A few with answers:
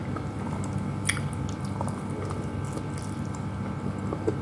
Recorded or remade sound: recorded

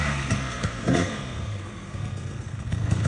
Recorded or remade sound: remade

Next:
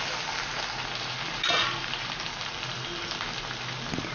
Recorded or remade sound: recorded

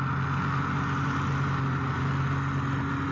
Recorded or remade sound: recorded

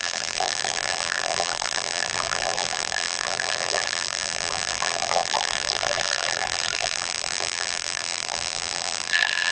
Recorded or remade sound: remade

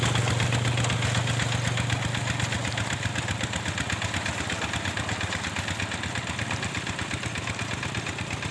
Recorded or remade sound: recorded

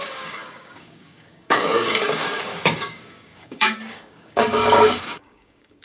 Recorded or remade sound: remade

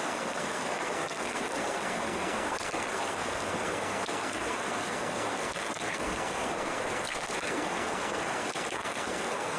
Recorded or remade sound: remade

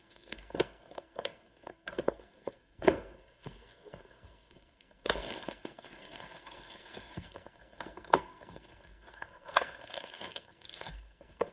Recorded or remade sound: remade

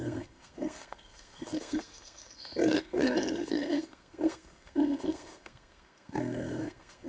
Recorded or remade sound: remade